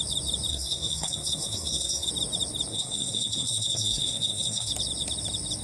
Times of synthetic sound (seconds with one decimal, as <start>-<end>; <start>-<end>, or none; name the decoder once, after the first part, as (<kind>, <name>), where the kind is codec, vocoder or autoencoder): 0.5-2.1 (codec, SNAC); 2.7-4.7